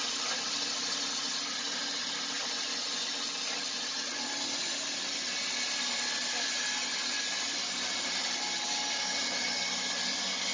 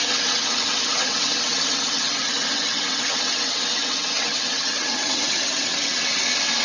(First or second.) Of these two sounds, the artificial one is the second